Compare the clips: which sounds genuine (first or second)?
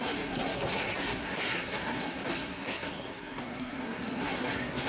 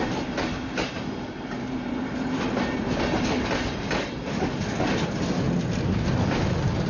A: second